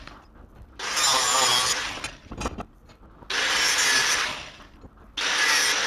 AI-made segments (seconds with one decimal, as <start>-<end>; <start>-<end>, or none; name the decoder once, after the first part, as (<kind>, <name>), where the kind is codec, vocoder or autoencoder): none